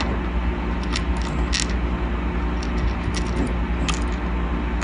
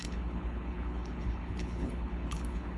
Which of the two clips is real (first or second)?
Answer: first